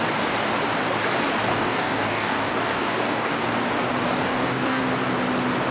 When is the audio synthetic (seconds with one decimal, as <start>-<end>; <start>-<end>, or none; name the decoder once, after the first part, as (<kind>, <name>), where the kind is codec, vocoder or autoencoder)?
1.5-3.3 (codec, DAC); 4.1-4.8